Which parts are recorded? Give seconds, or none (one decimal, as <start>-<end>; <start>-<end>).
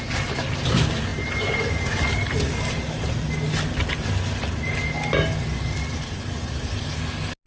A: 0.0-7.5